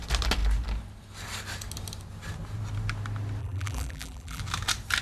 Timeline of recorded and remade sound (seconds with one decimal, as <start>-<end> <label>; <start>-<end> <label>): 0.0-3.4 recorded; 3.4-4.4 remade; 4.4-5.0 recorded